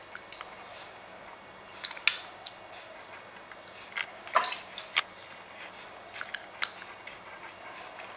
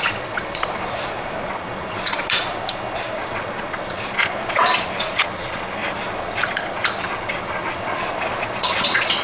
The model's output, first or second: second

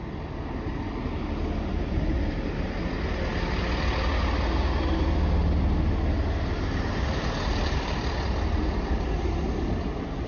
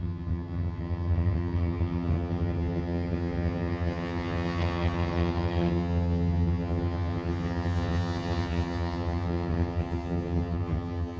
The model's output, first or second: second